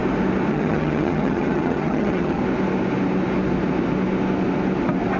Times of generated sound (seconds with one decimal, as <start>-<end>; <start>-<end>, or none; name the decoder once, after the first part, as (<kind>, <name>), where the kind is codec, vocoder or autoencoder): 0.5-2.4 (vocoder, HiFi-GAN)